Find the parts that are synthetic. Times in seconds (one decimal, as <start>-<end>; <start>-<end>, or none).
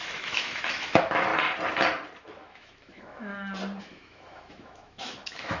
0.0-1.3; 2.2-3.3; 3.8-5.6